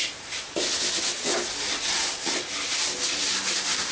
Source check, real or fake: real